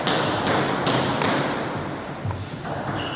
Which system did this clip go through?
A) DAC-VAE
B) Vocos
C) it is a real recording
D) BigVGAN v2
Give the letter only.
C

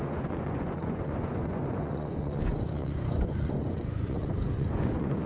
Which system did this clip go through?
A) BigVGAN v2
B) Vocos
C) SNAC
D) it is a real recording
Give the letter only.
B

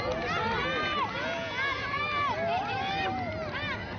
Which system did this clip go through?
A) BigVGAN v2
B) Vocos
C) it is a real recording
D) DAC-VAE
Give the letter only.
C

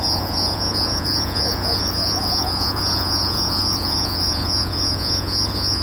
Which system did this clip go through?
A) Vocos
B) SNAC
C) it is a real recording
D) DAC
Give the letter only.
A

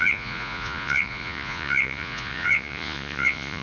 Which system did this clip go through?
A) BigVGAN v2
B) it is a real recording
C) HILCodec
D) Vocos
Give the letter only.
D